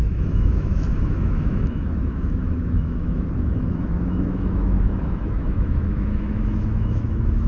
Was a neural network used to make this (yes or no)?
yes